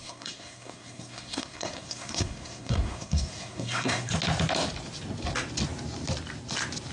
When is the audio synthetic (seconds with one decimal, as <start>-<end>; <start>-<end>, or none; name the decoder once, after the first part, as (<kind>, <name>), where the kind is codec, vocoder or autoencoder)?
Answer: 0.0-4.1 (codec, SNAC)